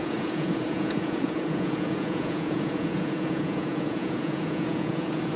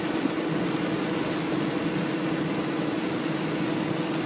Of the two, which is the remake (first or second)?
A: first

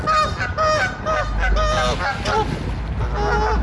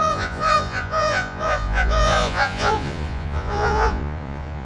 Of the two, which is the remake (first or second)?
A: second